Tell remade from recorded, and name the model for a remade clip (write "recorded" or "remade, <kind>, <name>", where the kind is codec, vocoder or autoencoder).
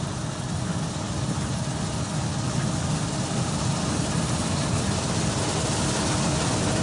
remade, vocoder, BigVGAN v2